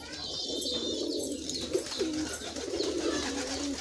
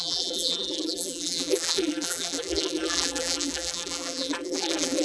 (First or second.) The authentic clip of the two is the first